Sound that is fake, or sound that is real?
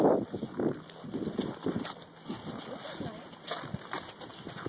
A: real